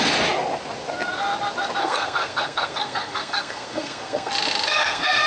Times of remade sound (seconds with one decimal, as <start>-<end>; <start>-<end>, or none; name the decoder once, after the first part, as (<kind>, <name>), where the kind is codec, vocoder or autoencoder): 1.8-4.3 (codec, SNAC); 4.7-5.3